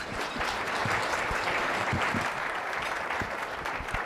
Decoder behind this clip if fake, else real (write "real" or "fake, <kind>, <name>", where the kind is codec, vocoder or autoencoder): fake, vocoder, BigVGAN v2